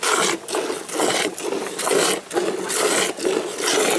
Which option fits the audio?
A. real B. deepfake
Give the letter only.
A